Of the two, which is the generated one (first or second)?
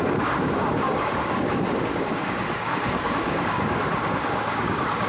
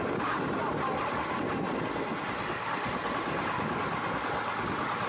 first